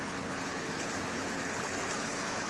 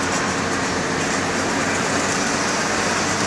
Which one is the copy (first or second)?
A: first